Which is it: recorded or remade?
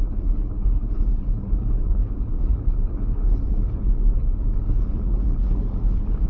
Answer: remade